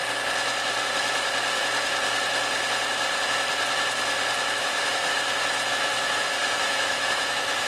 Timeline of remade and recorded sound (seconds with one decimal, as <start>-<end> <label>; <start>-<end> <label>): 0.0-4.6 recorded; 4.6-5.1 remade; 5.1-5.7 recorded; 5.7-7.7 remade